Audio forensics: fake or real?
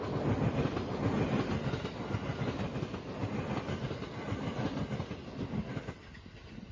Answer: real